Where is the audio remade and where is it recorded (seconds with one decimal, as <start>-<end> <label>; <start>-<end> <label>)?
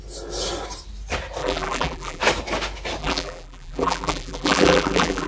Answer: 0.0-1.4 recorded; 1.4-2.2 remade; 2.2-3.0 recorded; 3.0-5.3 remade